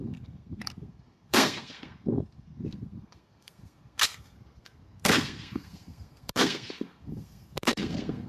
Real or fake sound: fake